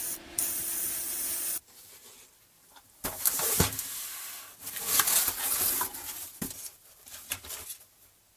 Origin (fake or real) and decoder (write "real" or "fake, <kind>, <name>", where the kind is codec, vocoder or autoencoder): real